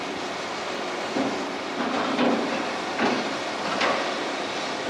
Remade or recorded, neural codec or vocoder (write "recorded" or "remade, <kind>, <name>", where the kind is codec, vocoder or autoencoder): recorded